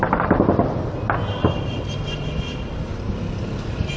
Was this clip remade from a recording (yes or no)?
no